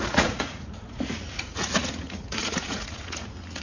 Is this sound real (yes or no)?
no